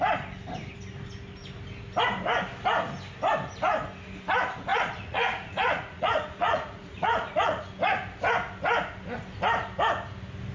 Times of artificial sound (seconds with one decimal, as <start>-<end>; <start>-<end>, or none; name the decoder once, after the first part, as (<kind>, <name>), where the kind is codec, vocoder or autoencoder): 4.7-7.6 (vocoder, Vocos)